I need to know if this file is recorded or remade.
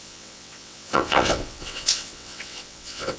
remade